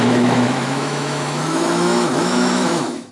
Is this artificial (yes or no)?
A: yes